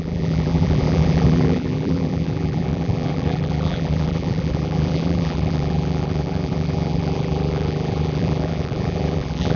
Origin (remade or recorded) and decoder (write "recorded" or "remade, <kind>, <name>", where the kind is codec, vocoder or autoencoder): remade, vocoder, BigVGAN v2